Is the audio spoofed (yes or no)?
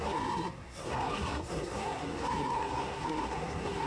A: yes